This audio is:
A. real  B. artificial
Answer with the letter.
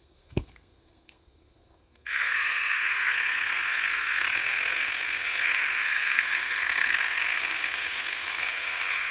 B